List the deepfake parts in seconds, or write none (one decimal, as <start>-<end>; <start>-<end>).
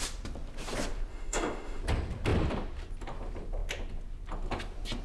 1.1-1.8